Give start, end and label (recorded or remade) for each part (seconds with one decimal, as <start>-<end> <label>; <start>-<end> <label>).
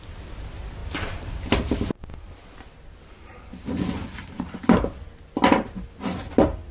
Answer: 0.0-0.8 recorded; 0.8-2.0 remade; 2.0-6.7 recorded